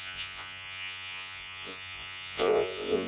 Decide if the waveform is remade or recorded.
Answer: remade